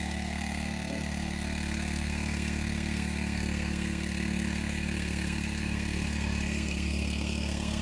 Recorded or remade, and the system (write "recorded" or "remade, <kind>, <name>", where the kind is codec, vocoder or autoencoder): remade, codec, SNAC